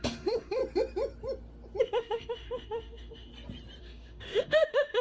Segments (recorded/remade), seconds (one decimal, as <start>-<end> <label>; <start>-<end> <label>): 0.0-0.6 remade; 0.6-1.8 recorded; 1.8-3.3 remade; 3.3-3.8 recorded; 3.8-5.0 remade